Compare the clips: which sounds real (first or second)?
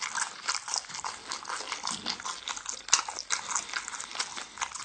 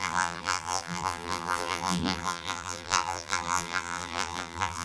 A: first